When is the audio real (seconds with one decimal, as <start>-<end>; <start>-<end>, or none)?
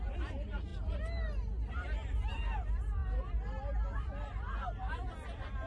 0.0-5.7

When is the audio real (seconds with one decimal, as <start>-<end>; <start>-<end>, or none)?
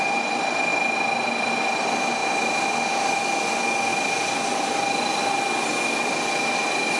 0.0-3.9; 5.2-7.0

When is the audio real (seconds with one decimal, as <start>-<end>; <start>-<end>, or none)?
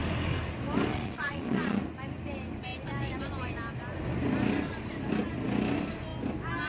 0.0-0.9; 1.8-6.7